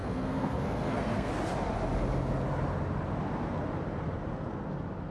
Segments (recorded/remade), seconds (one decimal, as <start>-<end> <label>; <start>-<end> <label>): 0.0-1.3 remade; 1.3-5.1 recorded